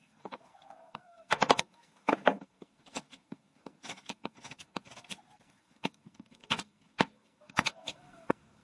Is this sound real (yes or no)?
no